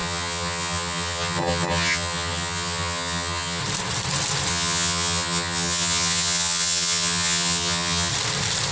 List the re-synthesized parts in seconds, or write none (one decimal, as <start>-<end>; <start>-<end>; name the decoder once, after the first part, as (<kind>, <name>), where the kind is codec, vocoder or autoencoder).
0.0-3.6 (vocoder, HiFi-GAN); 4.5-8.1